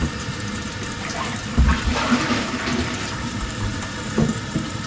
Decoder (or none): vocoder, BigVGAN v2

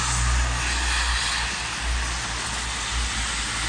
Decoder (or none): none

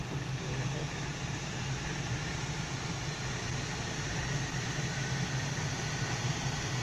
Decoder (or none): vocoder, BigVGAN v2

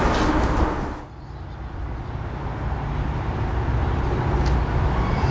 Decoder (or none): none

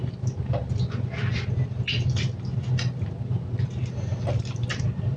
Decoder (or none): vocoder, BigVGAN v2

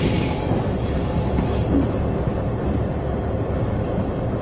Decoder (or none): vocoder, BigVGAN v2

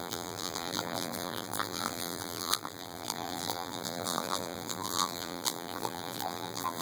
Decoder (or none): vocoder, BigVGAN v2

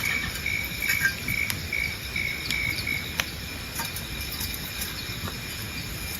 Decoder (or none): none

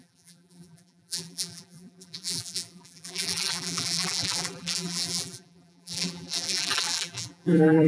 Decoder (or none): vocoder, BigVGAN v2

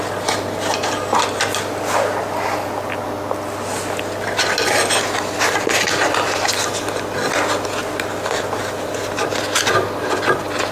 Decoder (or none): none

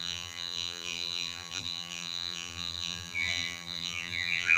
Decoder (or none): vocoder, BigVGAN v2